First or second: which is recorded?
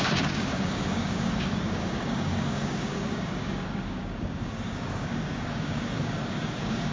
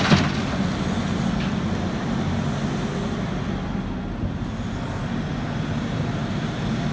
second